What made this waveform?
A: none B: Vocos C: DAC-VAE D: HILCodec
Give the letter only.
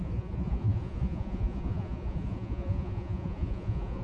B